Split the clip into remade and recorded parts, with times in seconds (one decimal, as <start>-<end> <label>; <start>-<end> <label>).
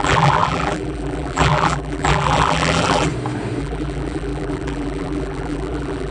0.0-3.1 remade; 3.1-3.6 recorded; 3.6-6.1 remade